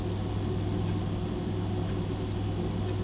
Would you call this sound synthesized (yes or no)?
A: no